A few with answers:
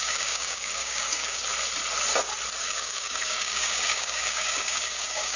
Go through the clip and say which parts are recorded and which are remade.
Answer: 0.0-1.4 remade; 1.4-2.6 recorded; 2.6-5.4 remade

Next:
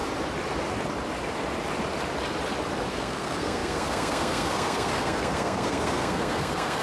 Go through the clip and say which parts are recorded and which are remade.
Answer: 0.0-2.9 recorded; 2.9-6.8 remade